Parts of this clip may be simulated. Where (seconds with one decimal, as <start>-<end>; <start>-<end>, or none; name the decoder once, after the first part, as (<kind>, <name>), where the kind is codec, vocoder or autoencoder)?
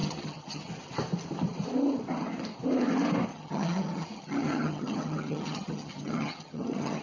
0.0-0.7 (vocoder, HiFi-GAN); 3.3-7.0